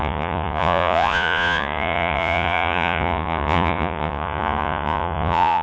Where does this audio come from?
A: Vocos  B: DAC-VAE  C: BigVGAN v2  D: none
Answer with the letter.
A